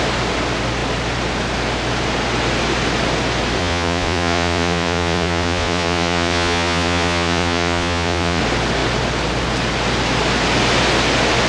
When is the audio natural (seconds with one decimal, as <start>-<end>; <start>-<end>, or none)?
0.0-3.6; 8.4-11.5